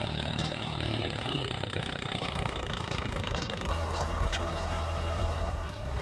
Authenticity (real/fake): fake